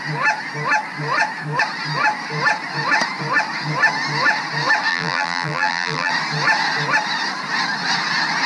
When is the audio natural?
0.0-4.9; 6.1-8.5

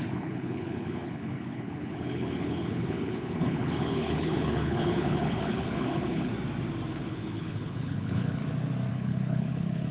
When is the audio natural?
6.3-6.9; 8.4-8.9